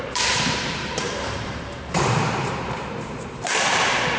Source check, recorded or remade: remade